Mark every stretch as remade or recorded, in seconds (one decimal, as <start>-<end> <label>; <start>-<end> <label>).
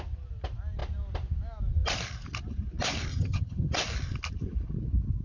0.0-3.1 recorded; 3.1-3.7 remade; 3.7-5.2 recorded